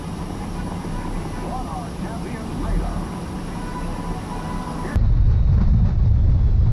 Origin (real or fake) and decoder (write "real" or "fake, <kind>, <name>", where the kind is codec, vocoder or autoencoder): real